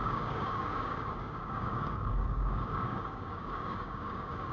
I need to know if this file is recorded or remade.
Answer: remade